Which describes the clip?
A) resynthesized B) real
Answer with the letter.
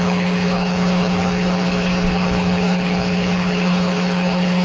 A